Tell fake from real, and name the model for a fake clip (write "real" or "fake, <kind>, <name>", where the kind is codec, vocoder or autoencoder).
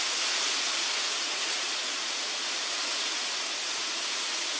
fake, vocoder, Vocos